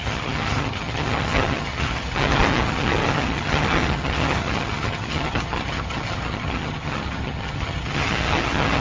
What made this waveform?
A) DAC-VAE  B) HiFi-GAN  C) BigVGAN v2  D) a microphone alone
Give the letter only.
B